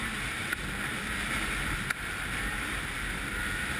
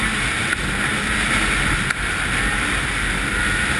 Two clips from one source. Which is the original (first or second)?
second